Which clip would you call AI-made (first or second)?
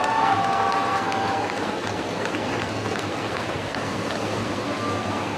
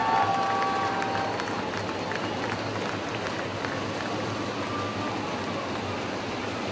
first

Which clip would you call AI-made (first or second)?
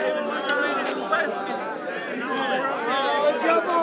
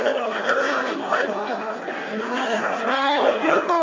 second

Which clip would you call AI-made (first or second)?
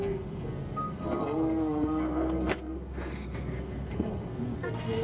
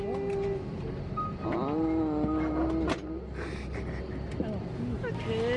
first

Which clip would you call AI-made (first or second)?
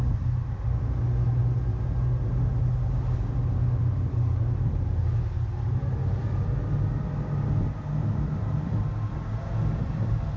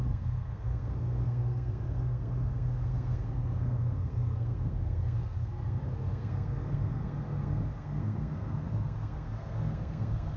second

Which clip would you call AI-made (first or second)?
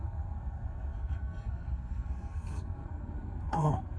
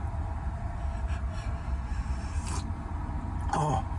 first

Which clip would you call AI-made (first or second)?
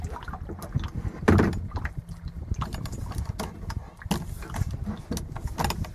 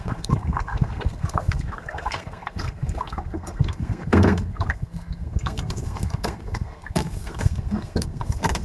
second